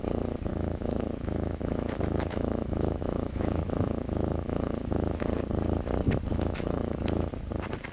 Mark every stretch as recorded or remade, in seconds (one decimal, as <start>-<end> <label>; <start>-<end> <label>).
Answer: 0.0-0.5 recorded; 0.5-5.2 remade; 5.2-6.3 recorded; 6.3-7.3 remade; 7.3-7.9 recorded